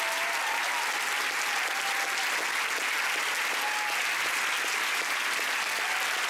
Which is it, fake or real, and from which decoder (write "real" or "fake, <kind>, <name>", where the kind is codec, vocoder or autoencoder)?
real